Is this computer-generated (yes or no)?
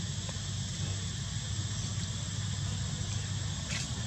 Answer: no